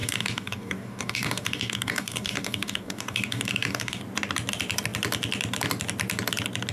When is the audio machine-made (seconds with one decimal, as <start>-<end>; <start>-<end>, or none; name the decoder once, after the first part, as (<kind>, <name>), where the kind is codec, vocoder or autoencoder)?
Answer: 0.0-4.0 (codec, DAC)